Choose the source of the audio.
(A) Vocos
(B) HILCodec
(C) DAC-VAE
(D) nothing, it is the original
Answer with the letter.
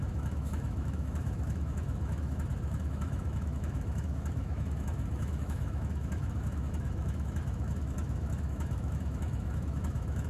C